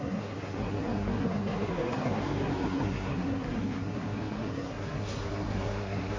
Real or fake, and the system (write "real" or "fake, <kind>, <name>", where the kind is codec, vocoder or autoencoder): fake, codec, SNAC